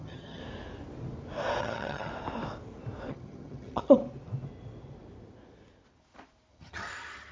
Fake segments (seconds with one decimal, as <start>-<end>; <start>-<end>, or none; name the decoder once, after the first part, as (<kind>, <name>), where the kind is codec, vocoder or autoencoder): 0.0-0.4 (vocoder, HiFi-GAN); 1.6-2.1; 3.1-4.0; 6.5-7.3